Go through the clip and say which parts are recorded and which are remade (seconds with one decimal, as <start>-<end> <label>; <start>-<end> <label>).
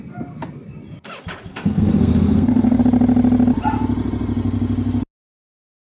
0.0-1.5 recorded; 1.5-2.8 remade; 2.8-5.9 recorded